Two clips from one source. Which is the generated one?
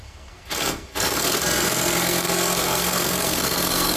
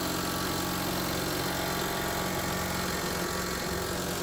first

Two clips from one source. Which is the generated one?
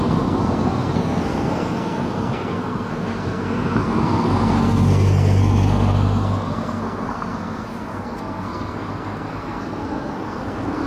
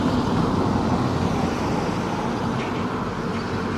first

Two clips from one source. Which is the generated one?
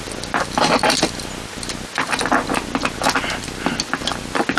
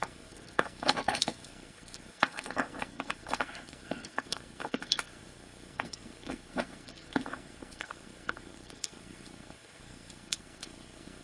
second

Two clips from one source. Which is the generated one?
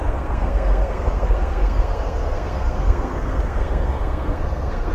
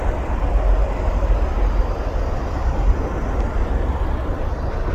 first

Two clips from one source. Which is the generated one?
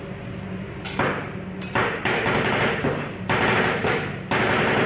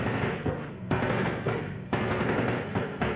second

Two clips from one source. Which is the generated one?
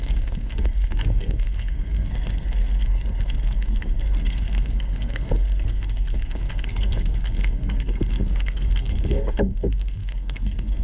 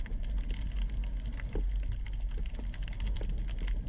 first